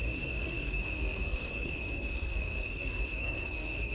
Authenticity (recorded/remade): remade